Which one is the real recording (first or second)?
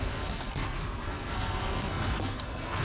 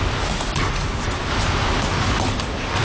second